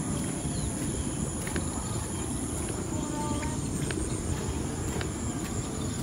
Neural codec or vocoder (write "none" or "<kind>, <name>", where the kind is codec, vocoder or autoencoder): none